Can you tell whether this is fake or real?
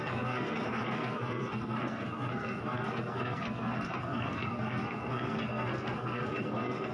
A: fake